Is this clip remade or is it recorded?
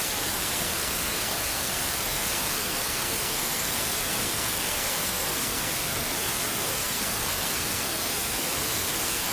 remade